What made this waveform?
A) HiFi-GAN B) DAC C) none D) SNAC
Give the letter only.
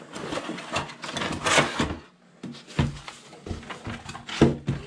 C